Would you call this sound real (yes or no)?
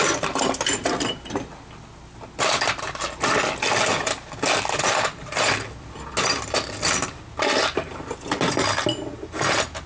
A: yes